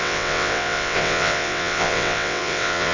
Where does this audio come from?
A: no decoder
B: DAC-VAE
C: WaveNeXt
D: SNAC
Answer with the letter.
C